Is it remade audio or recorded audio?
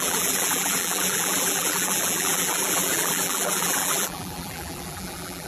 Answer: remade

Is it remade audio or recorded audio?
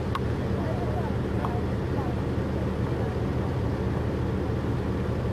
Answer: recorded